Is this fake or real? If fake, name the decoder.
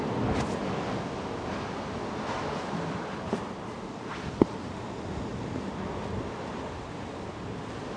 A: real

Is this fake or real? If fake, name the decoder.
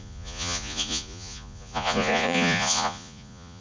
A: fake, vocoder, Vocos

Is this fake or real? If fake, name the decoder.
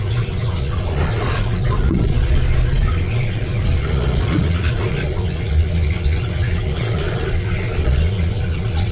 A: fake, vocoder, Vocos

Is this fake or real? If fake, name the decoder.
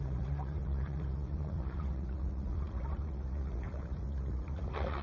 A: fake, vocoder, Vocos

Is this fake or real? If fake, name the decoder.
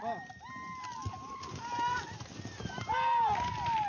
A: real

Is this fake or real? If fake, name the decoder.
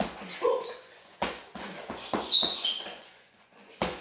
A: fake, vocoder, Vocos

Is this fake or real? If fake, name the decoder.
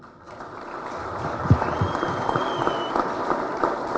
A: real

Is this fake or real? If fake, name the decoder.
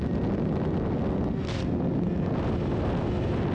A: real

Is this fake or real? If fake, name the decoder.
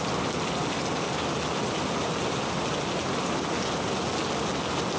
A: real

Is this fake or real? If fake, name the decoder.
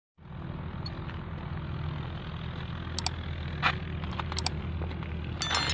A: real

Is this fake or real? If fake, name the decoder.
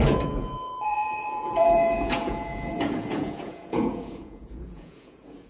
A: fake, vocoder, Vocos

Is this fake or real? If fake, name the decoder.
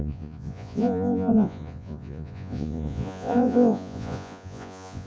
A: fake, vocoder, Vocos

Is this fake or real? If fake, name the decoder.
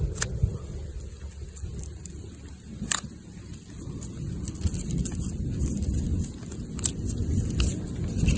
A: real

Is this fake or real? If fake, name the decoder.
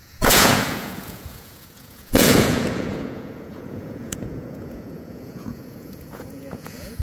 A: fake, vocoder, Vocos